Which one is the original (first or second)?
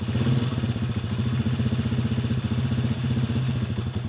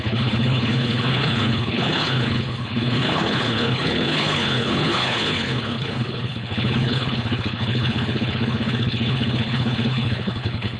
first